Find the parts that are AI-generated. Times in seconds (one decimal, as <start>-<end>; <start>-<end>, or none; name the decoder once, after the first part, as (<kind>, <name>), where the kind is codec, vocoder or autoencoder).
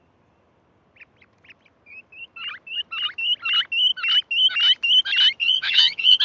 5.4-6.2 (vocoder, Vocos)